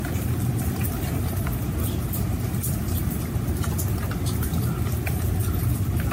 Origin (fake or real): real